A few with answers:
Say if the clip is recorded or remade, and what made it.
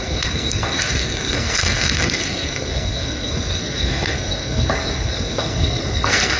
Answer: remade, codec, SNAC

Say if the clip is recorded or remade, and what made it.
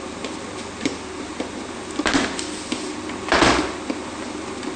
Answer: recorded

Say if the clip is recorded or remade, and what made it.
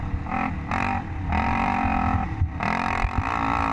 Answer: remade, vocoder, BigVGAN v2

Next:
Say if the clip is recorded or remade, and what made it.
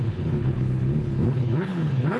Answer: remade, codec, HILCodec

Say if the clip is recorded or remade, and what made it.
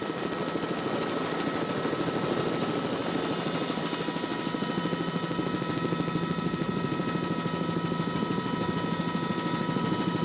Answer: recorded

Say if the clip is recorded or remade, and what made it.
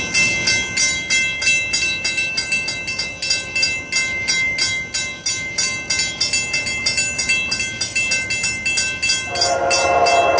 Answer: recorded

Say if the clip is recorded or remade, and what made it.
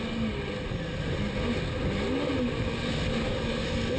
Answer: recorded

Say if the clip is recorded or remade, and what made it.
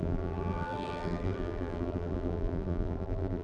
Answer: remade, vocoder, BigVGAN v2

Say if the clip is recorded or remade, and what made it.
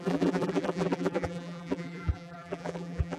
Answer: remade, vocoder, BigVGAN v2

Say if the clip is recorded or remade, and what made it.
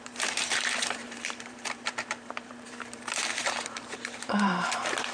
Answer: remade, vocoder, BigVGAN v2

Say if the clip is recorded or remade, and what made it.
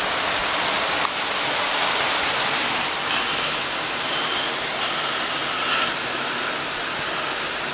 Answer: recorded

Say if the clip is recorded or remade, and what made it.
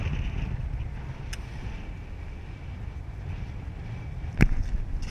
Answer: recorded